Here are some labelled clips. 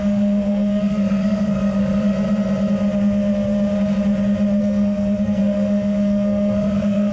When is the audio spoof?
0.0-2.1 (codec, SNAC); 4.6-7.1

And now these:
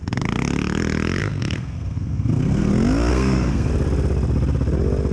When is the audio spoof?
1.2-2.7 (codec, SNAC); 3.1-3.7

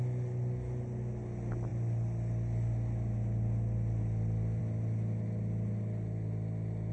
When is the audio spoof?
none

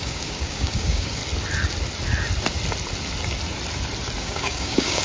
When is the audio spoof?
0.0-1.2 (codec, DAC); 4.2-5.0

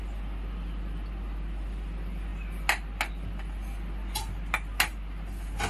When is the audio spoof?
none